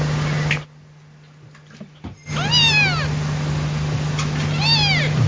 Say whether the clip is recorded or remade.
recorded